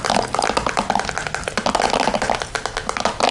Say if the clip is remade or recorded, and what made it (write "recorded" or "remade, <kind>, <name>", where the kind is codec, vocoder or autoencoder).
recorded